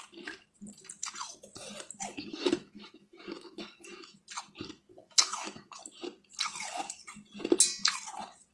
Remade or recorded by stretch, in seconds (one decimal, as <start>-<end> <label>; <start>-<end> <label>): 0.0-2.1 recorded; 2.1-4.2 remade; 4.2-4.9 recorded; 4.9-5.8 remade; 5.8-8.5 recorded